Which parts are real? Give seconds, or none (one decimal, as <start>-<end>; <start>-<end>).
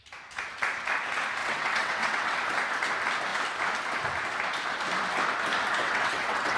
0.0-1.4; 2.4-5.8